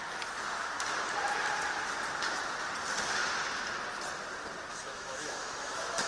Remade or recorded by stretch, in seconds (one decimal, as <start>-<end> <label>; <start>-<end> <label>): 0.0-4.7 recorded; 4.7-6.1 remade